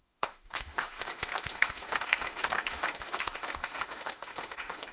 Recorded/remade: remade